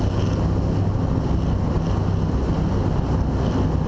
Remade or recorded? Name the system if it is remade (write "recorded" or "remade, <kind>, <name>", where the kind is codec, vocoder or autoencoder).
recorded